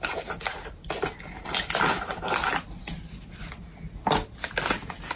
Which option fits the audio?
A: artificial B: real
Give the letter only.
B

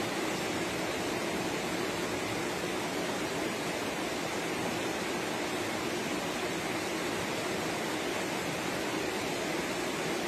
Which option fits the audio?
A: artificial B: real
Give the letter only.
B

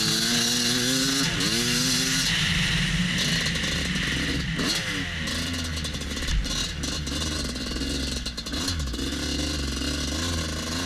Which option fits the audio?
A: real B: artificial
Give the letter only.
A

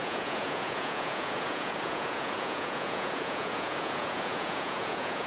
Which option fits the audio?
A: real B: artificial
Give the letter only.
B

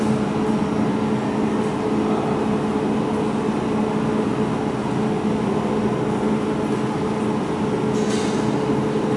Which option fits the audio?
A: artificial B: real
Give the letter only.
B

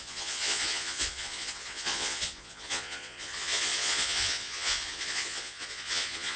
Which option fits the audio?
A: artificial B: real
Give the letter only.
A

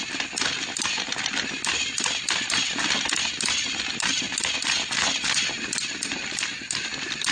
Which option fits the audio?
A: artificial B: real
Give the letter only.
B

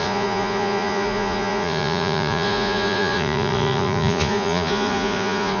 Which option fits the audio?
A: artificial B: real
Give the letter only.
A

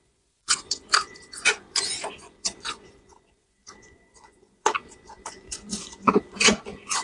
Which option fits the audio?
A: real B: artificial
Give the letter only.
B